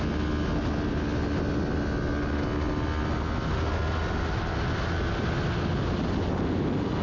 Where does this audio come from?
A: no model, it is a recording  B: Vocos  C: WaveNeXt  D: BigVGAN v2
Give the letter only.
A